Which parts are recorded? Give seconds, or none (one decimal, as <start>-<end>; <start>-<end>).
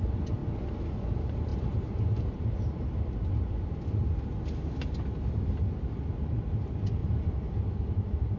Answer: 0.0-7.0; 7.6-8.4